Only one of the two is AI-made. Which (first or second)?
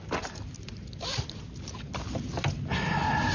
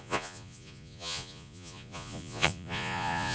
second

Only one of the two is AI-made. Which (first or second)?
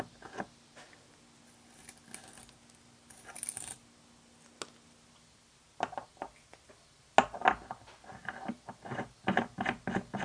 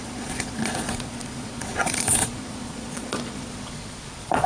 second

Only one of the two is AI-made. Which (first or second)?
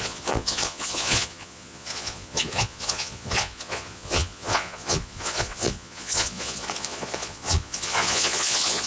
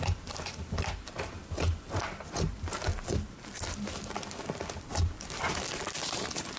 first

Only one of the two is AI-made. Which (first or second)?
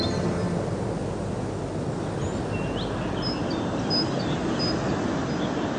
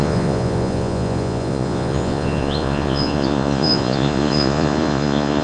second